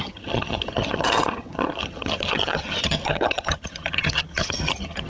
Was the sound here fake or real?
fake